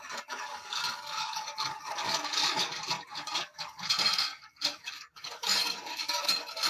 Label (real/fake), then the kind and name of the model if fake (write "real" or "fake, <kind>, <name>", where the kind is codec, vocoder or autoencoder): fake, codec, DAC